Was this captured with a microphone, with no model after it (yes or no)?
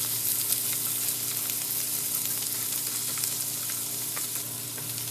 yes